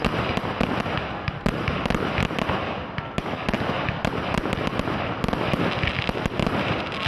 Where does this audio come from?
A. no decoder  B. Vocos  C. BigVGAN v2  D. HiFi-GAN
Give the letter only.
A